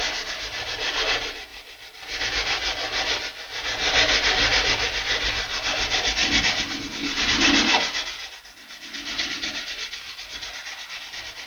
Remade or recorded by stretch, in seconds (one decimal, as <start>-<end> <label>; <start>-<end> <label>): 0.0-1.5 recorded; 1.5-2.2 remade; 2.2-11.5 recorded